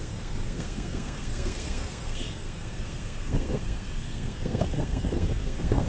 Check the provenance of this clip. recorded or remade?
remade